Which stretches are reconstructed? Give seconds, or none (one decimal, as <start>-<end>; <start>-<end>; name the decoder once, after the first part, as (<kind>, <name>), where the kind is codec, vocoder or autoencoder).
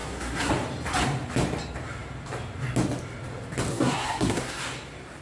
0.0-0.5 (codec, SNAC); 3.7-4.6